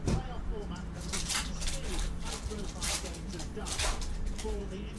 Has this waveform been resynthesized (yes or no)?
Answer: yes